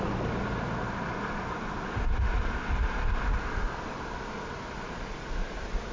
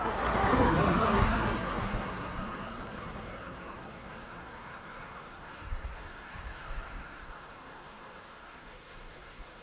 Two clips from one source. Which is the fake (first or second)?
second